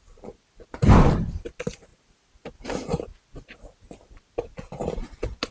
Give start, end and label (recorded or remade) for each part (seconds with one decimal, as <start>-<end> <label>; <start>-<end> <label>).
0.0-5.5 recorded

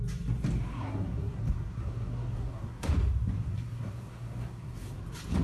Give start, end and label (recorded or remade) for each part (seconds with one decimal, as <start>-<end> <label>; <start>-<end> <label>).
0.0-0.7 recorded; 0.7-2.9 remade; 2.9-3.5 recorded; 3.5-5.0 remade; 5.0-5.4 recorded

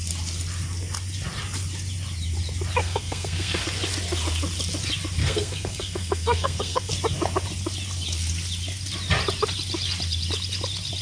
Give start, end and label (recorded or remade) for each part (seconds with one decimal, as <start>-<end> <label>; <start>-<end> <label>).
0.0-2.8 recorded; 2.8-3.6 remade; 3.6-5.2 recorded; 5.2-6.9 remade; 6.9-11.0 recorded

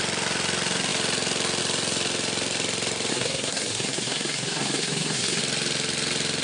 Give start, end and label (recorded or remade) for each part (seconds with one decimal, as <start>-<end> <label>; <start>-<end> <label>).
0.0-3.1 recorded; 3.1-5.4 remade; 5.4-6.4 recorded

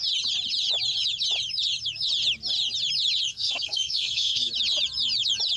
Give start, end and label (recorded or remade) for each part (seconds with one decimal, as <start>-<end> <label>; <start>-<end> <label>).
0.0-3.3 recorded; 3.3-4.5 remade; 4.5-5.6 recorded

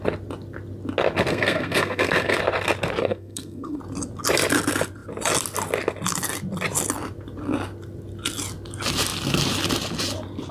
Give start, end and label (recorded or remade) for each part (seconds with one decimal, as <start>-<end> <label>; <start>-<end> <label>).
0.0-1.3 recorded; 1.3-2.4 remade; 2.4-3.0 recorded; 3.0-3.8 remade; 3.8-10.5 recorded

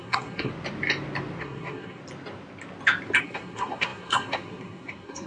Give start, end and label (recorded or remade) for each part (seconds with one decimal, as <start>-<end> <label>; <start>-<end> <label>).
0.0-0.5 remade; 0.5-1.4 recorded; 1.4-2.0 remade; 2.0-3.2 recorded; 3.2-5.3 remade